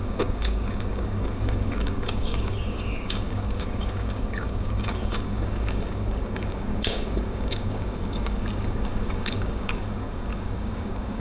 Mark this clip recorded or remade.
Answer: remade